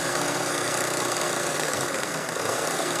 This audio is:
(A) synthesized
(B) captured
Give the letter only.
A